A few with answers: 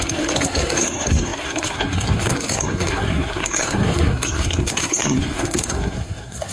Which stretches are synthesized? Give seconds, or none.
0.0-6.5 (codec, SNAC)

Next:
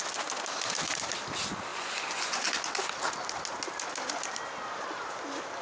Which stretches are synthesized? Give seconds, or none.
1.7-2.5 (vocoder, Vocos)